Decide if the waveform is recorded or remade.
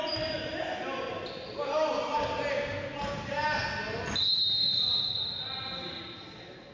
recorded